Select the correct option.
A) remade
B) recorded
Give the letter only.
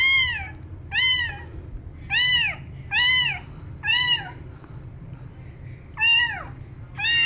B